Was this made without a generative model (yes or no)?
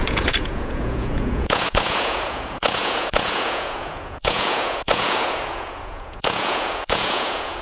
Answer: no